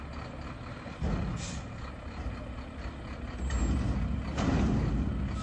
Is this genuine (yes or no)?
yes